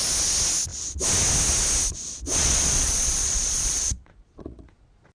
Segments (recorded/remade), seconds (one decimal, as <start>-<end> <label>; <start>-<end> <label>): 0.0-2.3 recorded; 2.3-5.1 remade

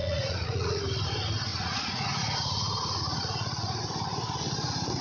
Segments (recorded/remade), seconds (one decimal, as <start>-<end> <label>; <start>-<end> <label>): 0.0-0.8 remade; 0.8-1.5 recorded; 1.5-3.8 remade; 3.8-5.0 recorded